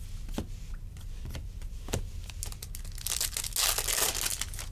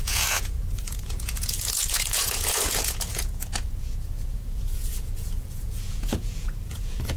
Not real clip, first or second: second